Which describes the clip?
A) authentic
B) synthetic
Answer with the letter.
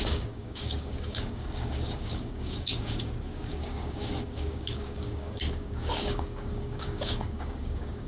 B